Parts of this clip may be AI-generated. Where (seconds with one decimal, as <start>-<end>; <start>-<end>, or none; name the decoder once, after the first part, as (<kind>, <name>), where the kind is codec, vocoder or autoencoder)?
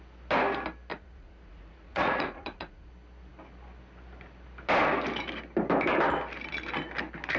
0.9-2.9 (vocoder, Vocos)